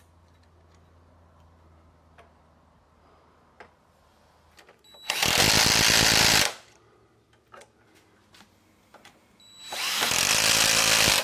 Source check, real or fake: real